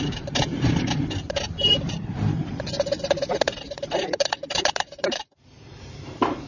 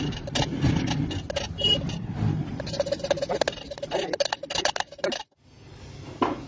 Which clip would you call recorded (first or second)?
second